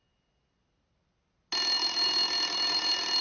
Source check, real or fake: real